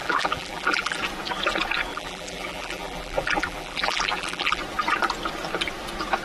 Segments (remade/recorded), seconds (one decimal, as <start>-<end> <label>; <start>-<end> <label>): 0.0-1.0 remade; 1.0-1.9 recorded; 1.9-4.6 remade; 4.6-6.2 recorded